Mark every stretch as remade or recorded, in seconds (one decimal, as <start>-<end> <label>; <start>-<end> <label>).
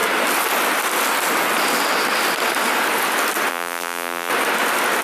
0.0-3.5 recorded; 3.5-4.3 remade; 4.3-5.0 recorded